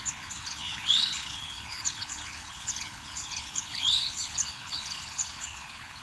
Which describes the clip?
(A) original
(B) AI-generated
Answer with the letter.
B